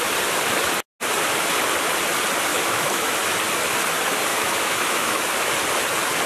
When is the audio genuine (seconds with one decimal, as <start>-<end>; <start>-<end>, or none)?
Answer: 0.0-2.5; 3.4-4.3; 5.5-6.3